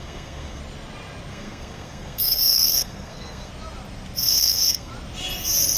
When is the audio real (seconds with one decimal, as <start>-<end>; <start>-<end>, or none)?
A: 0.6-1.3; 3.5-4.2; 4.9-5.8